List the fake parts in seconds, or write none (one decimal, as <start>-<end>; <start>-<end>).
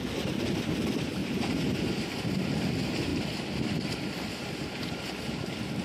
1.2-2.7